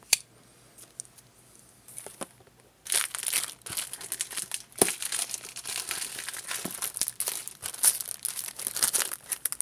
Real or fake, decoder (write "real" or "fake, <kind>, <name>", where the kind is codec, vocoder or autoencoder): real